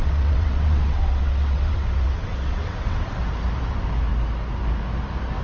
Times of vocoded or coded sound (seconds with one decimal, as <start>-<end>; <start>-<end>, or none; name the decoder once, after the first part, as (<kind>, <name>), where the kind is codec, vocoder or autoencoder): 0.0-3.2 (vocoder, WaveNeXt)